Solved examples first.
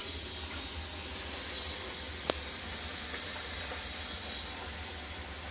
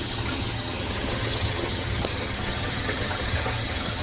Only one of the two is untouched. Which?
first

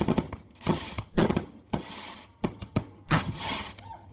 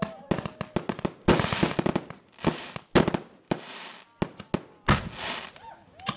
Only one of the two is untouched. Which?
second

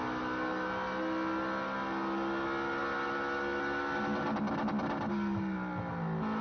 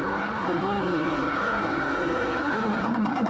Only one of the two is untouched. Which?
first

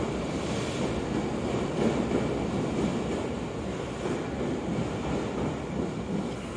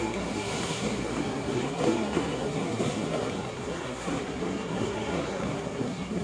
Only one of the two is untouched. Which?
first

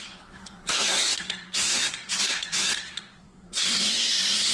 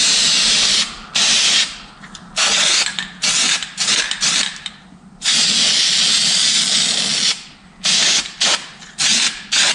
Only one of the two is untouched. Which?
second